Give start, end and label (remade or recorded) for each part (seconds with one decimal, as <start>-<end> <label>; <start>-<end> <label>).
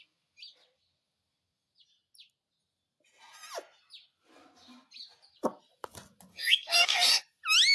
0.0-6.3 recorded; 6.3-7.2 remade; 7.2-7.7 recorded